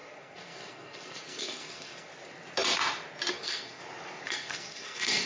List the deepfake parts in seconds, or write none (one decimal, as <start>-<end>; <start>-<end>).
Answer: 0.0-2.1; 3.3-3.8; 4.3-5.3